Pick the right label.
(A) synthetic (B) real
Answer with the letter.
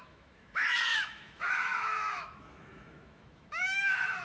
A